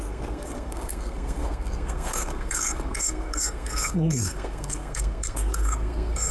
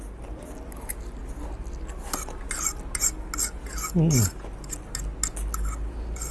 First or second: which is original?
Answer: second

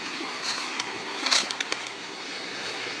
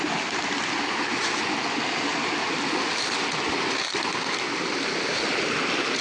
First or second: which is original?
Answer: second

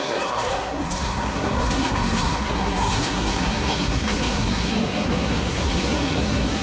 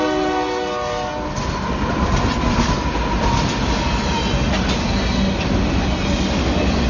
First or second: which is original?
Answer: second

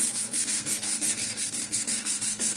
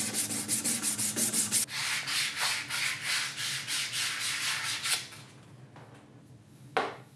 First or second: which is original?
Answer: second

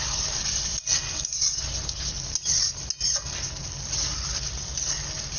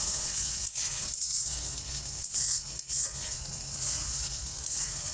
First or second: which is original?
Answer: first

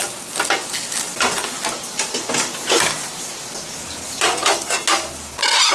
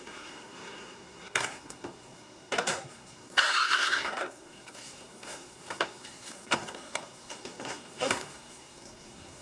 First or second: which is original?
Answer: first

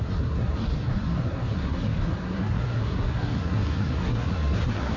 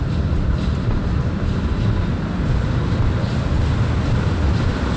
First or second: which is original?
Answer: second